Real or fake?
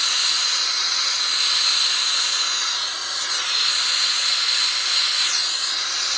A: real